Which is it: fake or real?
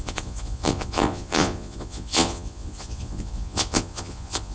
fake